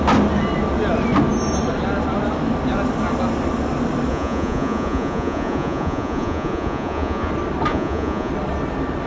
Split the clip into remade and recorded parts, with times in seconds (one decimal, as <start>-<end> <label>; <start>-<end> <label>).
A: 0.0-4.1 recorded; 4.1-7.3 remade; 7.3-7.7 recorded; 7.7-8.3 remade; 8.3-9.1 recorded